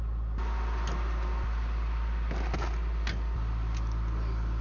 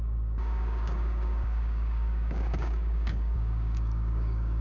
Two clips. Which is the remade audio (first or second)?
second